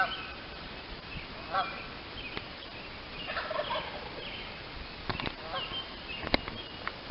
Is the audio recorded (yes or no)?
yes